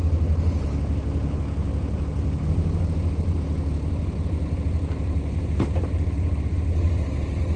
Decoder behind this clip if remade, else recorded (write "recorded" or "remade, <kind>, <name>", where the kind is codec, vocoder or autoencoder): recorded